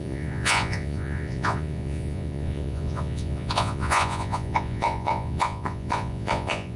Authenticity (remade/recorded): remade